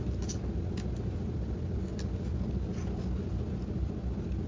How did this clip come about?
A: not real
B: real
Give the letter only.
B